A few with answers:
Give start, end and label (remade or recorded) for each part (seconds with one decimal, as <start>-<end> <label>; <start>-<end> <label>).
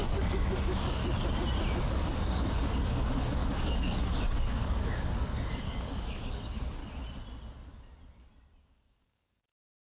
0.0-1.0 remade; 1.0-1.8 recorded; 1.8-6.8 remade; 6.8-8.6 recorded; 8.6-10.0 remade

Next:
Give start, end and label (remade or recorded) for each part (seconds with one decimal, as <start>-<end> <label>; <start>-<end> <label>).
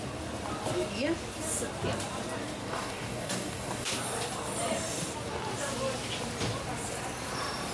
0.0-2.6 recorded; 2.6-3.9 remade; 3.9-7.7 recorded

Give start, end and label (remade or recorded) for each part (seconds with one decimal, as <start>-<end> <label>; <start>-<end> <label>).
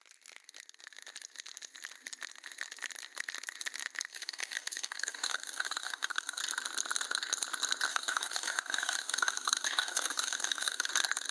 0.0-4.1 recorded; 4.1-6.4 remade; 6.4-7.9 recorded; 7.9-10.9 remade; 10.9-11.3 recorded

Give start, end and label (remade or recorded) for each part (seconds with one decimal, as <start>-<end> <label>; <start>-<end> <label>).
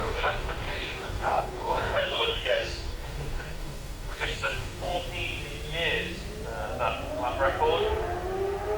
0.0-5.1 remade; 5.1-8.8 recorded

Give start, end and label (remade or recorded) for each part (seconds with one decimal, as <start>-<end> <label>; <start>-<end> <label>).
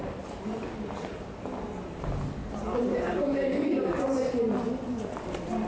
0.0-2.9 recorded; 2.9-3.9 remade; 3.9-5.7 recorded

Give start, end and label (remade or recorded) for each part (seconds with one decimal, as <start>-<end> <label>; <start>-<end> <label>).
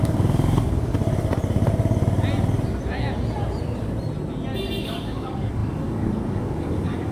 0.0-1.0 remade; 1.0-4.8 recorded; 4.8-7.1 remade